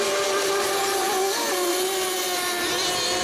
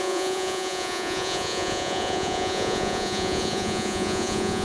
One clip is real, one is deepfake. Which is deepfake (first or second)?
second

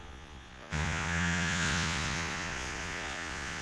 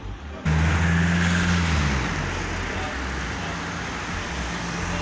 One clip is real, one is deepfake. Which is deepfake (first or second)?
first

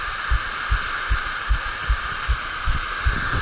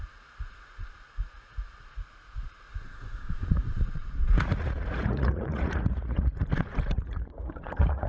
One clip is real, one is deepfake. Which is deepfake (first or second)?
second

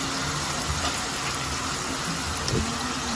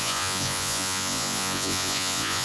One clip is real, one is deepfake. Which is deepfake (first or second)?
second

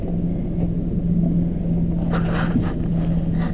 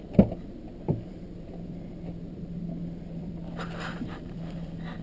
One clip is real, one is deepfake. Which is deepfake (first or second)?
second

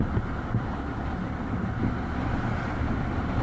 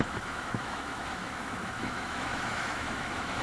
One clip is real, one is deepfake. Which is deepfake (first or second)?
second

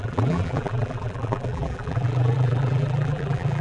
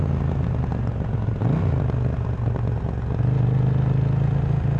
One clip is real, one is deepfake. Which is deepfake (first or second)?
first